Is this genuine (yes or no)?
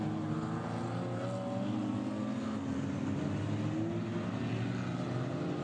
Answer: yes